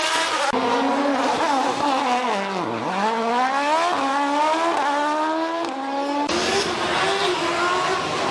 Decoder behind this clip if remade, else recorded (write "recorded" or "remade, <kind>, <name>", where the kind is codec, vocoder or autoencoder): recorded